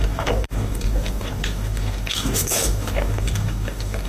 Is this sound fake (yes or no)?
yes